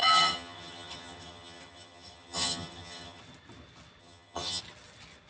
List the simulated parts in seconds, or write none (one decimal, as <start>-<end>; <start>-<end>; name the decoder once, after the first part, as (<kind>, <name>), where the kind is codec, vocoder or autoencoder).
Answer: 0.0-3.2 (vocoder, HiFi-GAN); 4.0-4.6